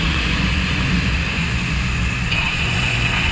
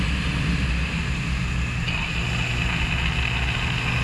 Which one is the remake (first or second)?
first